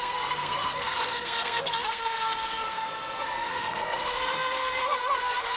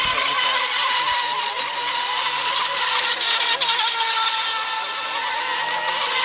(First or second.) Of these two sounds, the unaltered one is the second